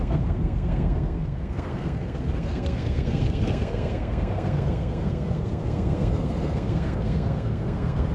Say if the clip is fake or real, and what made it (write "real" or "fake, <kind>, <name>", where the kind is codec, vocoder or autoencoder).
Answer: fake, codec, SNAC